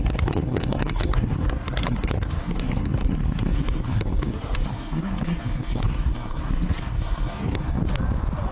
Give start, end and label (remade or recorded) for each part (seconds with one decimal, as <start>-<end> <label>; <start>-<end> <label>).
0.0-7.8 remade; 7.8-8.5 recorded